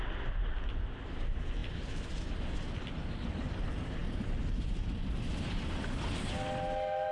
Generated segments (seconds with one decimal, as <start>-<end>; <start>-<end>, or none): none

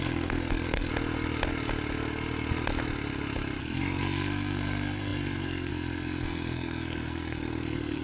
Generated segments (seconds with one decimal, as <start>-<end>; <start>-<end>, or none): 0.0-0.9; 3.6-8.0

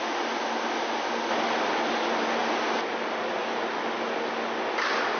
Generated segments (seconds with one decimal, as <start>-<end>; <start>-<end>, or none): none

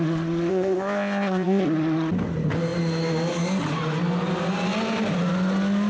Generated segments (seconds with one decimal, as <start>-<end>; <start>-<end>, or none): 0.5-1.6

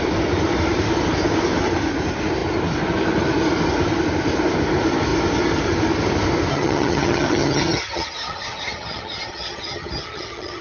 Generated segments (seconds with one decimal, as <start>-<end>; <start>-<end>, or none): 6.5-10.6

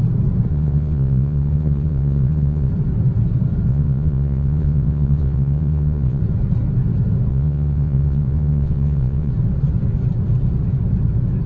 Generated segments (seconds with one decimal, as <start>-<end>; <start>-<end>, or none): 0.5-2.7; 3.7-6.2; 7.3-9.3